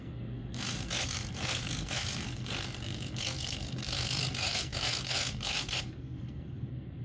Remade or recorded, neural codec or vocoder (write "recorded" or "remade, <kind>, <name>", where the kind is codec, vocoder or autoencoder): remade, codec, SNAC